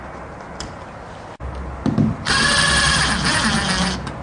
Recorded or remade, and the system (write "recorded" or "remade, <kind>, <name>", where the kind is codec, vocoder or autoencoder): recorded